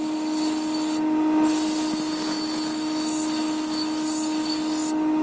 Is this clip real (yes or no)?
yes